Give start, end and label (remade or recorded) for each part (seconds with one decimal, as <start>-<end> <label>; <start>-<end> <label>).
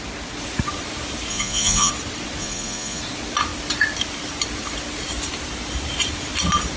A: 0.0-1.3 recorded; 1.3-1.9 remade; 1.9-2.4 recorded; 2.4-3.0 remade; 3.0-6.8 recorded